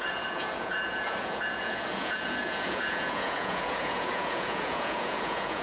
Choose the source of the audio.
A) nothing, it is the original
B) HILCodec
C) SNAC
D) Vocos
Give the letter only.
D